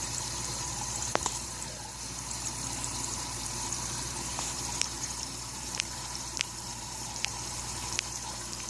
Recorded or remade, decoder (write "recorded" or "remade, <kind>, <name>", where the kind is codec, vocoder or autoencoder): remade, vocoder, BigVGAN v2